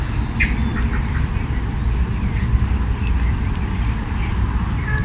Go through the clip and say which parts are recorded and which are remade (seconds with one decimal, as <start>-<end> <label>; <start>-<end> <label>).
0.0-5.0 recorded